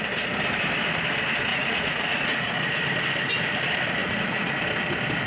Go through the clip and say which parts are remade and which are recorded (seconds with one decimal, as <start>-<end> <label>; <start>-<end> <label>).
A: 0.0-1.5 recorded; 1.5-2.5 remade; 2.5-4.0 recorded; 4.0-4.6 remade; 4.6-5.3 recorded